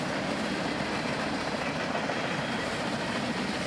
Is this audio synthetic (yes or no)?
no